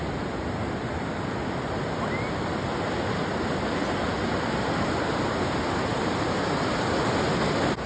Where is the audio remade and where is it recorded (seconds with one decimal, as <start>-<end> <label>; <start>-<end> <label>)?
0.0-7.9 recorded